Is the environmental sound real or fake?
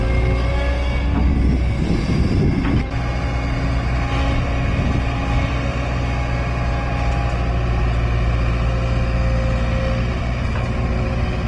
real